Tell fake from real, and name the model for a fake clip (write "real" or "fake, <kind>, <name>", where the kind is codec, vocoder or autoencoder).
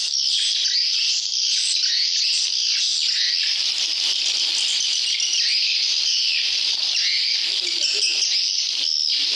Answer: real